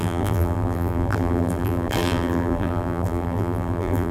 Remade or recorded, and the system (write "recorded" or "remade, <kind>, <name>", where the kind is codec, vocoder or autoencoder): remade, vocoder, BigVGAN v2